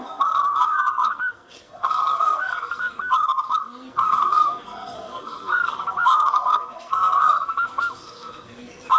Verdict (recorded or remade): remade